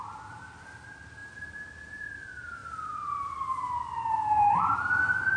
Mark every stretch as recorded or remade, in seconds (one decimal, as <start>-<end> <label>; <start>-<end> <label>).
0.0-5.4 recorded